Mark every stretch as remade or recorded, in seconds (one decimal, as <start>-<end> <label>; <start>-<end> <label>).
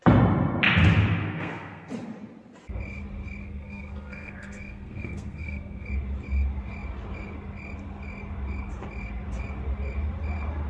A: 0.0-1.2 recorded; 1.2-1.9 remade; 1.9-3.4 recorded; 3.4-5.9 remade; 5.9-10.7 recorded